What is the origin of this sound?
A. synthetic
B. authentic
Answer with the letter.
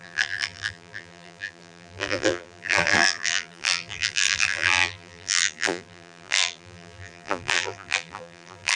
A